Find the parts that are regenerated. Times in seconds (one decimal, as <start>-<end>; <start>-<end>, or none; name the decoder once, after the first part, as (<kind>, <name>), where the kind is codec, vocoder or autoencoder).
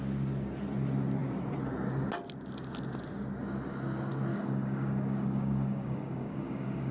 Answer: 4.3-6.9 (codec, DAC)